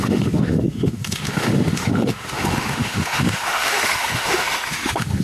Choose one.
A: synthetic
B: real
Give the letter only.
A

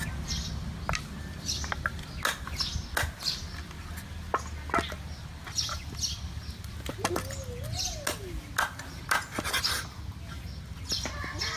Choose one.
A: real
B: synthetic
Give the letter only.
A